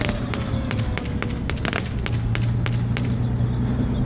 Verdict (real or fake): real